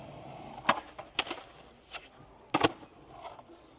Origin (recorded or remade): recorded